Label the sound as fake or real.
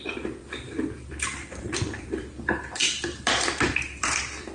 fake